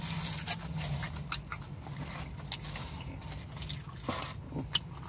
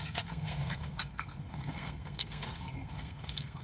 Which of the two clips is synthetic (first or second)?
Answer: second